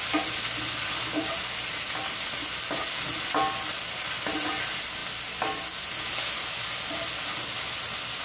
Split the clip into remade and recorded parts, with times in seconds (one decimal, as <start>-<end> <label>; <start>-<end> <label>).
0.0-8.2 recorded